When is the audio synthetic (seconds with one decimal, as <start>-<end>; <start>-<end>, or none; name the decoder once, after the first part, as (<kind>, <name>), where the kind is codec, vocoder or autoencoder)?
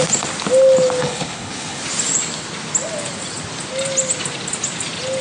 1.0-1.8 (codec, HILCodec)